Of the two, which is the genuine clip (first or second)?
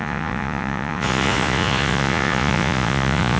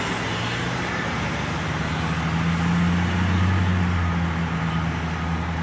second